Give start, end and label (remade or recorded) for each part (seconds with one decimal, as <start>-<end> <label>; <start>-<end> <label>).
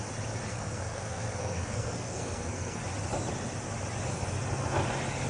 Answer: 0.0-0.5 recorded; 0.5-2.8 remade; 2.8-5.3 recorded